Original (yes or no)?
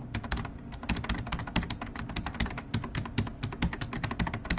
yes